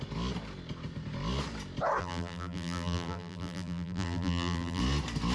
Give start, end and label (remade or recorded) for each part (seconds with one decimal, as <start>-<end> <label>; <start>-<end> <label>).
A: 0.0-2.0 recorded; 2.0-4.8 remade; 4.8-5.3 recorded